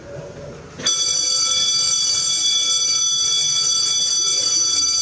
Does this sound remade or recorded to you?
recorded